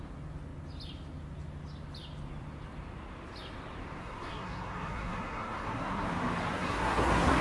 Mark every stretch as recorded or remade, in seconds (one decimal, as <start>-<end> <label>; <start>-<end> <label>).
0.0-4.0 recorded; 4.0-6.1 remade; 6.1-6.5 recorded; 6.5-7.4 remade